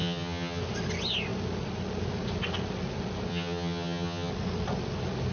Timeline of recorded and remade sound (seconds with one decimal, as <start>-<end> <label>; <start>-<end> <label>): 0.0-0.6 remade; 0.6-3.3 recorded; 3.3-4.3 remade; 4.3-5.3 recorded